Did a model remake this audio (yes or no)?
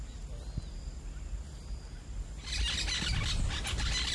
no